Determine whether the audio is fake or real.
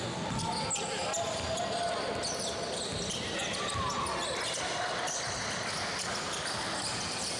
real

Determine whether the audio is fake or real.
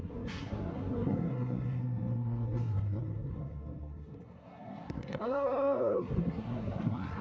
fake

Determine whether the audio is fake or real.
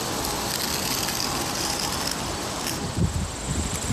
real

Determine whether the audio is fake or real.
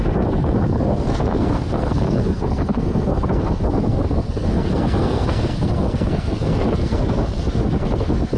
fake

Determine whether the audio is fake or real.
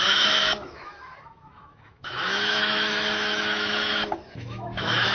fake